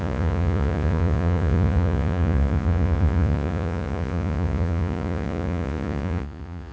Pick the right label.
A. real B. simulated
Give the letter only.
B